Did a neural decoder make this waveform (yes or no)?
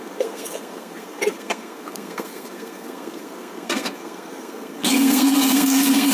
yes